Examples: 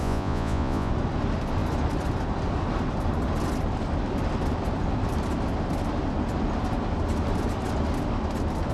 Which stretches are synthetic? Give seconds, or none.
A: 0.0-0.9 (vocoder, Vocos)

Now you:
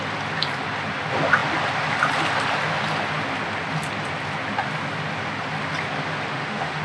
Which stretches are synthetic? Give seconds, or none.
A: 6.3-6.8 (autoencoder, DAC-VAE)

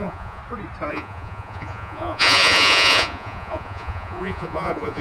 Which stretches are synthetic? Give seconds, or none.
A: 0.0-0.4 (vocoder, Vocos); 0.9-5.0

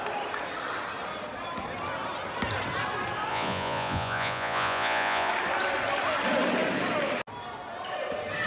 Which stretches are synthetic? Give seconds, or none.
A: 3.3-5.3 (vocoder, Vocos)

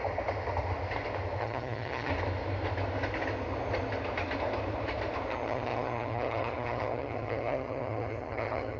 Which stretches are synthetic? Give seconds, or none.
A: 1.4-2.1 (vocoder, HiFi-GAN); 5.3-8.8

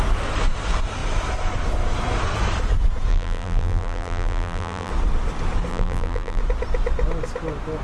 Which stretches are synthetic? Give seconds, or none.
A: 3.1-4.9 (vocoder, BigVGAN v2); 5.7-6.4

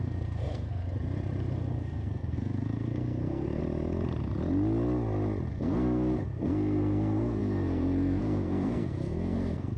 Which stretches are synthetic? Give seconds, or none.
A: 0.0-0.8 (codec, SNAC); 1.7-3.6; 5.5-9.8